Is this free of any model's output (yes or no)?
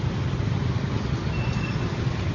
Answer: yes